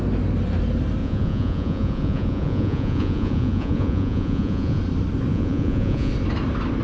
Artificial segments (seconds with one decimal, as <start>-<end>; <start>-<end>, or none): 1.0-4.8; 5.3-6.1